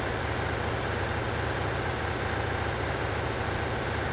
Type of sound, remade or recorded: recorded